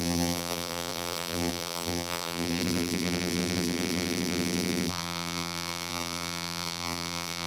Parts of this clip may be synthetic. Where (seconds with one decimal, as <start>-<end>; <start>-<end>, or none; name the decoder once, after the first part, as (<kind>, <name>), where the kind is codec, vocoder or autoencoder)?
0.0-7.5 (vocoder, BigVGAN v2)